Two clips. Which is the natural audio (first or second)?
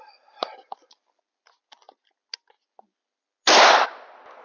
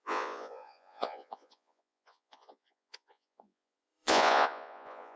first